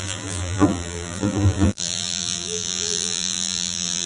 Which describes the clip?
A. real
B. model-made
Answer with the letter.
B